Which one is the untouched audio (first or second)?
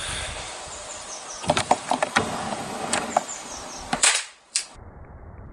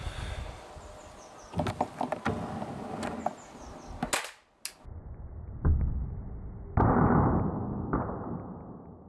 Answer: second